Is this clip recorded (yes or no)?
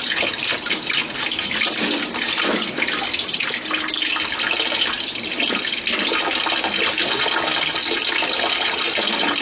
yes